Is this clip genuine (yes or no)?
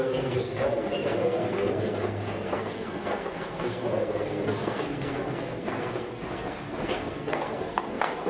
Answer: no